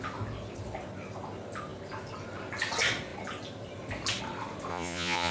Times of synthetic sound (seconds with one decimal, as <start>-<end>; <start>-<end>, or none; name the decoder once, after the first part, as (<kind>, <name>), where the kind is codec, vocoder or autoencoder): 4.7-5.3 (vocoder, Vocos)